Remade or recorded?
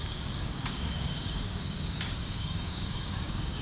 remade